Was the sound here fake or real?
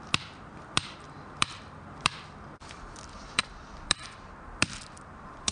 fake